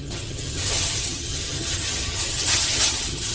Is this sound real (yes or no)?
no